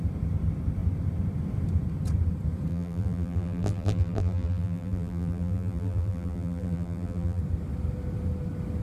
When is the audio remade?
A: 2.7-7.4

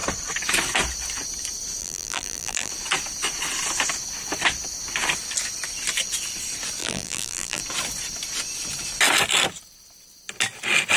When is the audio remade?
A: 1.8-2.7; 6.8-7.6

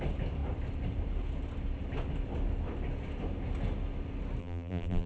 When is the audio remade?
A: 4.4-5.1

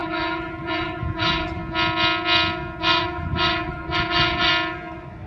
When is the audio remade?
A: 0.0-1.6; 2.8-4.5

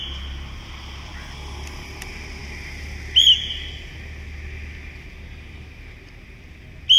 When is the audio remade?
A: none